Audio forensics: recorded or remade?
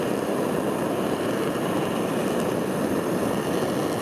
remade